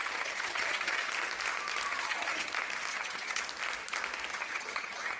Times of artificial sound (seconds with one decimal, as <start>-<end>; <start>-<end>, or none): 0.0-1.1; 1.9-2.5; 2.9-3.4; 4.3-5.2